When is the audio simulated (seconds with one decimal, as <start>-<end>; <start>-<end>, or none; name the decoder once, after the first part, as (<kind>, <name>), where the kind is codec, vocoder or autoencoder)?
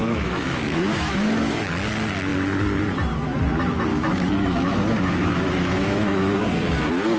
0.0-1.7 (autoencoder, DAC-VAE); 3.9-6.4